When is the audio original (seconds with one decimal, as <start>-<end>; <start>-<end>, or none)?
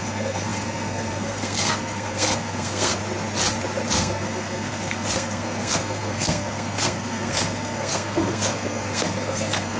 3.0-3.9